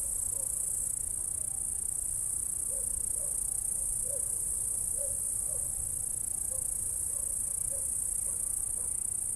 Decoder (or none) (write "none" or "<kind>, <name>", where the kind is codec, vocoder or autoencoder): none